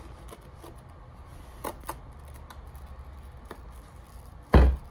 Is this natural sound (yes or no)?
yes